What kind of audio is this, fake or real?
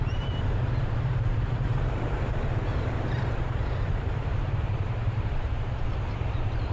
fake